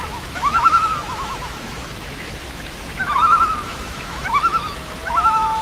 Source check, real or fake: fake